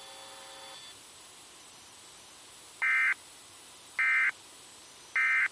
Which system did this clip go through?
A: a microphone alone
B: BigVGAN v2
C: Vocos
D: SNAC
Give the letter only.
A